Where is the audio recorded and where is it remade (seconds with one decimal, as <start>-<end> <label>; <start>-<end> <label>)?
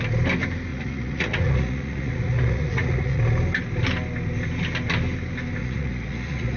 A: 0.0-0.7 recorded; 0.7-3.2 remade; 3.2-5.6 recorded; 5.6-6.6 remade